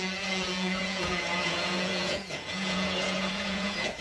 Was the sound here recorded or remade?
remade